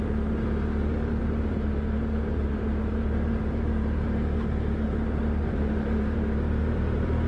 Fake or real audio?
fake